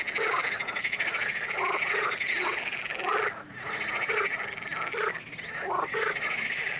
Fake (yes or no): no